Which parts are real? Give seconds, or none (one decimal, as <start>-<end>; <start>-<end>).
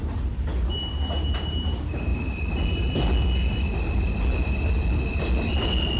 0.0-6.0